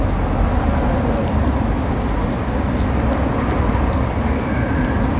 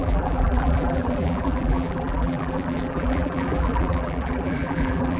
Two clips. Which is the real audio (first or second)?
first